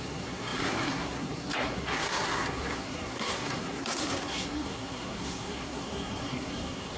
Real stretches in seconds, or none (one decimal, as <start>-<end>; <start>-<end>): none